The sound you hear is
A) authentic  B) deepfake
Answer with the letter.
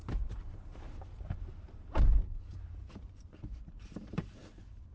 B